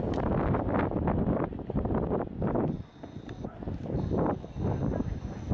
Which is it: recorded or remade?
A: recorded